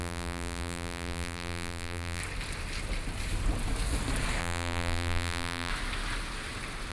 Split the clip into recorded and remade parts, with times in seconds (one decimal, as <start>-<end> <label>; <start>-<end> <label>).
0.0-2.2 remade; 2.2-4.4 recorded; 4.4-5.7 remade; 5.7-6.9 recorded